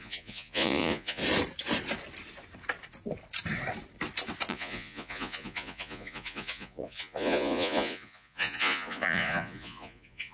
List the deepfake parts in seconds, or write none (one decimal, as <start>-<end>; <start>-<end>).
0.0-1.2; 4.5-10.3